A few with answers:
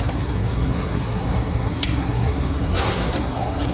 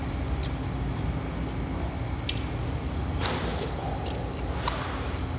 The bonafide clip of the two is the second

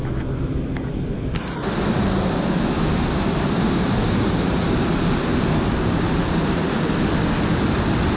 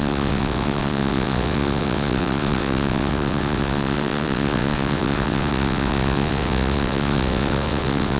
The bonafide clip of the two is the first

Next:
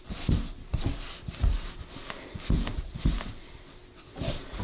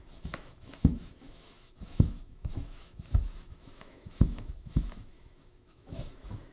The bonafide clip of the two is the first